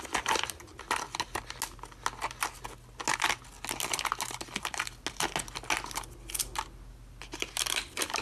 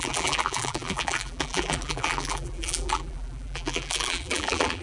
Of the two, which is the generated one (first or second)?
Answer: second